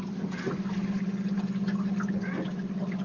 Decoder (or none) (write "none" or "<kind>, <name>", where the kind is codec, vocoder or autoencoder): none